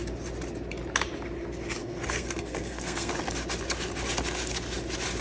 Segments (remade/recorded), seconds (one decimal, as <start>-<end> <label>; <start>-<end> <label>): 0.0-1.8 recorded; 1.8-3.1 remade; 3.1-5.2 recorded